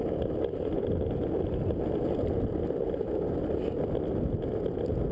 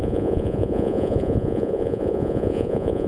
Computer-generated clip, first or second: second